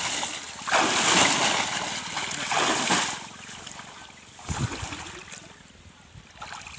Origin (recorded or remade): recorded